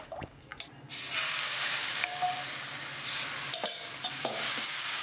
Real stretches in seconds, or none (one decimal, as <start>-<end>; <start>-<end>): 0.5-1.3; 2.4-4.1